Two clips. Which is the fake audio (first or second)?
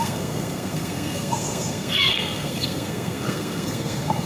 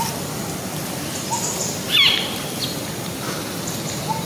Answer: first